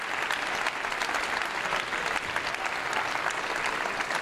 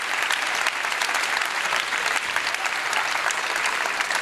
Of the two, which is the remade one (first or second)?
second